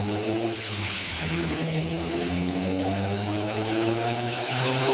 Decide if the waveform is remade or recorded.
remade